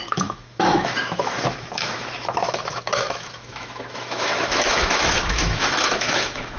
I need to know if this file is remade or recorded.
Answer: remade